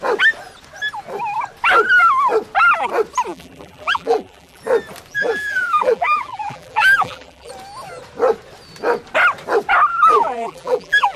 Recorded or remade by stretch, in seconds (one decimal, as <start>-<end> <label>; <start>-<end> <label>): 0.0-3.3 recorded; 3.3-4.6 remade; 4.6-5.1 recorded; 5.1-7.5 remade; 7.5-9.9 recorded; 9.9-11.2 remade